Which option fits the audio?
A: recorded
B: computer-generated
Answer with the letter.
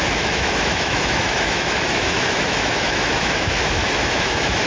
B